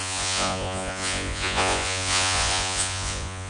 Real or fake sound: fake